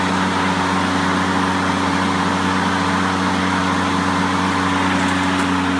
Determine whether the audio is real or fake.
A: real